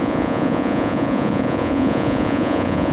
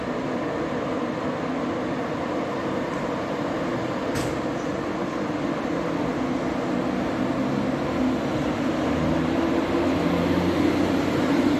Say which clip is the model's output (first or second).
first